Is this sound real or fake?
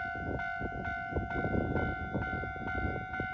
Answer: real